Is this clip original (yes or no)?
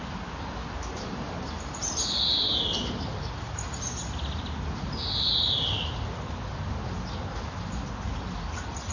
yes